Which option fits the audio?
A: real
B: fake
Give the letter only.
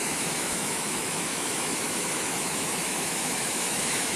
B